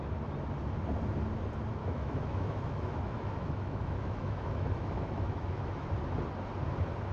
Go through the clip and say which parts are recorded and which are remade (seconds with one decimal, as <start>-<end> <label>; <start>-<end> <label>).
0.0-1.8 recorded; 1.8-5.9 remade; 5.9-7.1 recorded